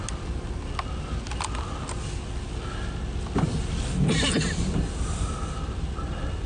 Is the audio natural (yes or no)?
yes